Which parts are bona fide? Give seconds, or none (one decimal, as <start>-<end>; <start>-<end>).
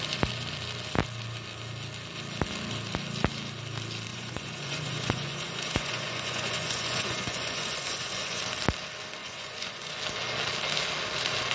0.0-4.1; 8.4-9.2; 10.0-11.5